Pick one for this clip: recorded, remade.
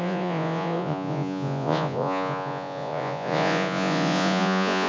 remade